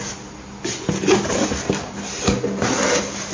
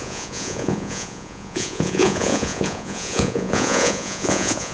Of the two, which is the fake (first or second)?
second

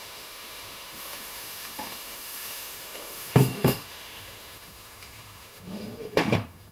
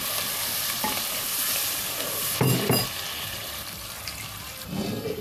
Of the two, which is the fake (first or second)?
first